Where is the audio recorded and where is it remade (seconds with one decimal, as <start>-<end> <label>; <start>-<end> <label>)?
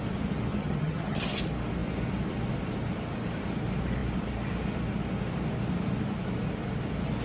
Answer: 0.0-0.5 recorded; 0.5-1.4 remade; 1.4-7.2 recorded